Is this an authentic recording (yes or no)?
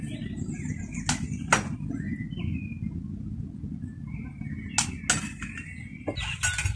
yes